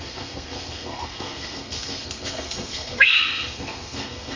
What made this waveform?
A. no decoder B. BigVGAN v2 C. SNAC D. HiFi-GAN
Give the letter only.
C